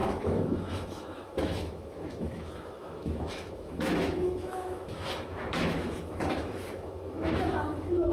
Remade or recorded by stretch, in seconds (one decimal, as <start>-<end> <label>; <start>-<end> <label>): 0.0-8.1 remade